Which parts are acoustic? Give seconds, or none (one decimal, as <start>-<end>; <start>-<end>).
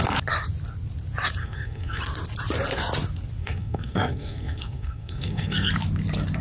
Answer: 0.0-1.4; 2.0-3.4; 5.7-6.4